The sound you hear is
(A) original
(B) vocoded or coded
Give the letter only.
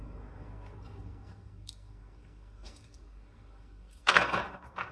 B